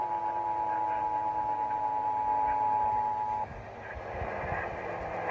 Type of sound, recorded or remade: recorded